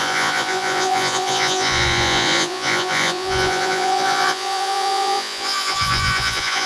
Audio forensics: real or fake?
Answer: fake